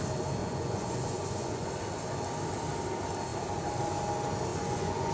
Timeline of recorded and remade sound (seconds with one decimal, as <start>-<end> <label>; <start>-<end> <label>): 0.0-0.4 recorded; 0.4-1.7 remade; 1.7-4.5 recorded; 4.5-5.1 remade